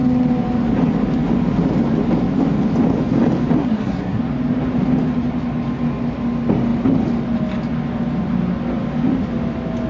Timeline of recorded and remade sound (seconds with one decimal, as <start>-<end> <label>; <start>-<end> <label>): 0.0-3.6 recorded; 3.6-4.2 remade; 4.2-9.9 recorded